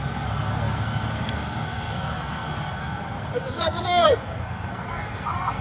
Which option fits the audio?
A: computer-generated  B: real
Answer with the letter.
A